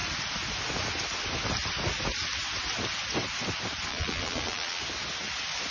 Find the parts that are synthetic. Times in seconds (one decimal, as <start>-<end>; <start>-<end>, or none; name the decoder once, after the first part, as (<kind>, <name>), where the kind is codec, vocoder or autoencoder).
3.9-4.8 (vocoder, Vocos)